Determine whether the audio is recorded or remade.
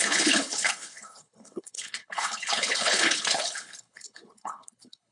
remade